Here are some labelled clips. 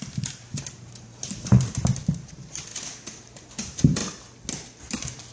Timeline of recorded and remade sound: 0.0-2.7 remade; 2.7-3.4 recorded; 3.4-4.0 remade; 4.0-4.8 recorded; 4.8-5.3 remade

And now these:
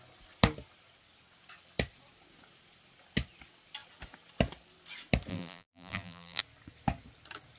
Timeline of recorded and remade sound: 0.0-5.3 recorded; 5.3-6.4 remade; 6.4-7.6 recorded

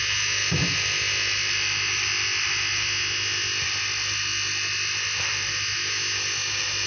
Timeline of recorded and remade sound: 0.0-6.9 recorded

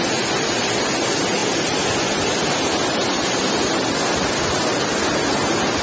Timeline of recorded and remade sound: 0.0-5.8 recorded

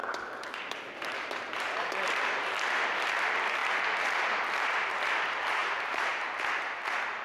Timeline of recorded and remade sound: 0.0-1.6 remade; 1.6-5.6 recorded; 5.6-6.2 remade; 6.2-7.2 recorded

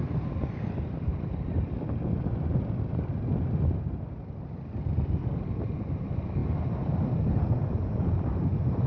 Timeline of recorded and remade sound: 0.0-1.1 remade; 1.1-4.2 recorded; 4.2-5.2 remade; 5.2-6.0 recorded; 6.0-6.4 remade; 6.4-6.9 recorded; 6.9-8.9 remade

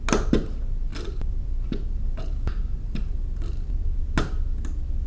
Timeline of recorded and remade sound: 0.0-0.9 recorded; 0.9-4.0 remade; 4.0-5.1 recorded